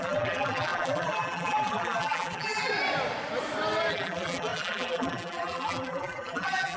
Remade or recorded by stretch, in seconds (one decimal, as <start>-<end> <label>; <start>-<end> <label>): 0.0-2.7 remade; 2.7-3.9 recorded; 3.9-6.8 remade